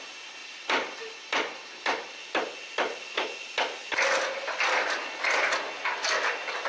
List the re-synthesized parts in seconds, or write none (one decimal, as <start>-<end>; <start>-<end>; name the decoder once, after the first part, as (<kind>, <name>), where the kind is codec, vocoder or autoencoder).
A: 0.4-3.9 (vocoder, BigVGAN v2)